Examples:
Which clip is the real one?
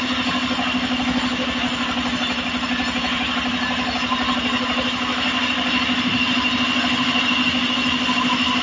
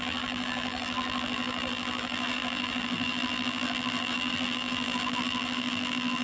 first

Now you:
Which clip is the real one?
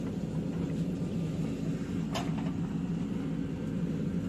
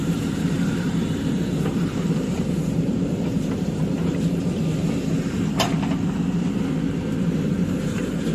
first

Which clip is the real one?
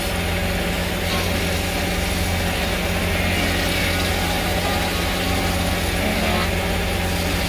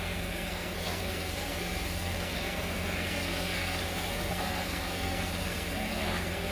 first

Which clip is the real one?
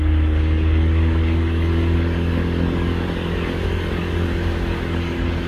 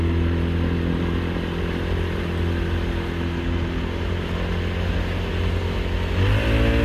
second